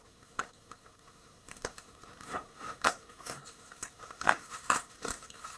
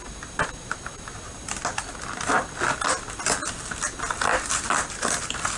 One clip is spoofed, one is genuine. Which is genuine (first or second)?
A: second